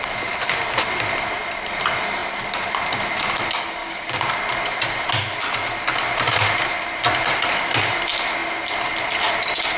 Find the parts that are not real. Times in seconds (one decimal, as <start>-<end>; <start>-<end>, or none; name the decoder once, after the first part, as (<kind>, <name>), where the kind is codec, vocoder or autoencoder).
3.8-4.3 (codec, DAC)